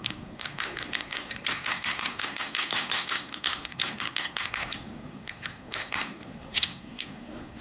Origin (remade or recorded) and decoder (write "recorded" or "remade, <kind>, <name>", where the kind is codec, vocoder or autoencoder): remade, codec, SNAC